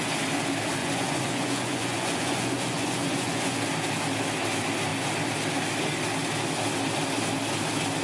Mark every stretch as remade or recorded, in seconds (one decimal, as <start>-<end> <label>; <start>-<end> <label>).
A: 0.0-0.8 recorded; 0.8-3.6 remade; 3.6-8.0 recorded